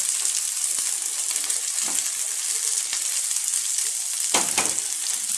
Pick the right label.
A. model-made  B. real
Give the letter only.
B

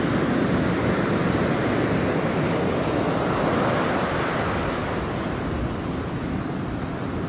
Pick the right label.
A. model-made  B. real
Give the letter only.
B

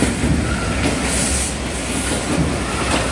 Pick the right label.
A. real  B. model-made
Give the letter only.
A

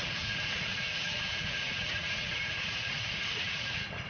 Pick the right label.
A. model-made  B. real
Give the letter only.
A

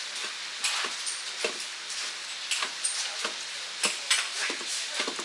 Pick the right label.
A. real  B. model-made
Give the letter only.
A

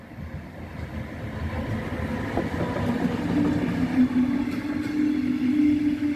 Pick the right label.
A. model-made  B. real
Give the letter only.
B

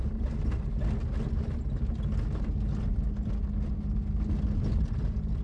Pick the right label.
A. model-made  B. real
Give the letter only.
B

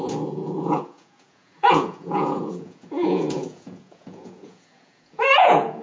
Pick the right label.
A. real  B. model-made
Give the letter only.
B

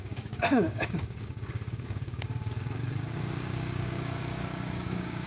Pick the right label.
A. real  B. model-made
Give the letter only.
B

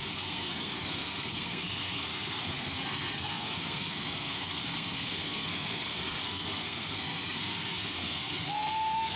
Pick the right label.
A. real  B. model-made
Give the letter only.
B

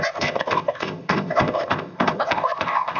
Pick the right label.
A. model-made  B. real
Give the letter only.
A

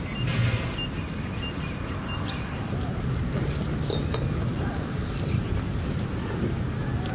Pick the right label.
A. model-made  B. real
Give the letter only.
B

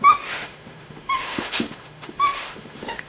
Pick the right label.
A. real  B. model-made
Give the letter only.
B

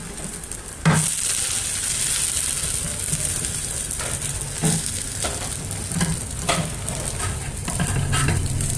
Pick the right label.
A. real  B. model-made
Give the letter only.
A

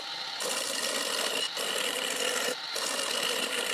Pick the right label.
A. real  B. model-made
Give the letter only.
A